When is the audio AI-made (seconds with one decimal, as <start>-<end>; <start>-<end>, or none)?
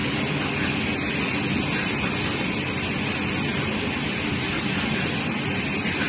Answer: none